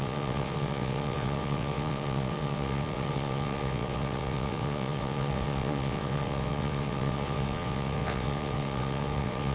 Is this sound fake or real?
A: fake